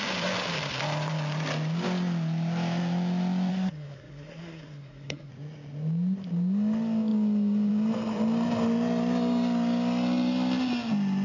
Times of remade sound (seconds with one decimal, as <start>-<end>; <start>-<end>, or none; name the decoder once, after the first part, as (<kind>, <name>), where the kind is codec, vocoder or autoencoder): 3.5-5.3 (codec, SNAC)